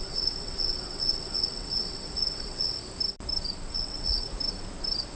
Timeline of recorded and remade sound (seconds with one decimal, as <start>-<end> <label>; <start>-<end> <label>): 0.0-2.8 remade; 2.8-3.7 recorded; 3.7-4.3 remade; 4.3-5.2 recorded